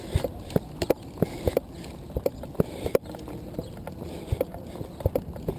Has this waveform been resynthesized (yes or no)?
no